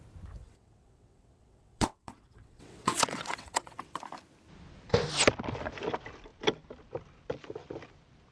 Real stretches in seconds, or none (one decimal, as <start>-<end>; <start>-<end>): 0.0-0.4; 4.0-8.3